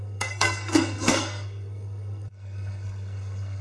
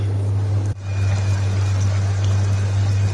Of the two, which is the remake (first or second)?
first